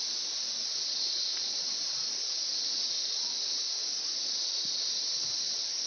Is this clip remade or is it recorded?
recorded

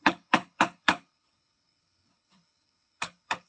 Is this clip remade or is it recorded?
remade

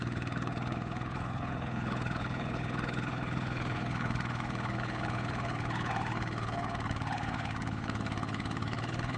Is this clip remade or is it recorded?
remade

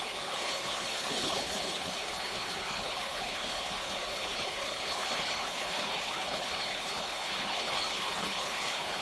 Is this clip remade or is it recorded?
remade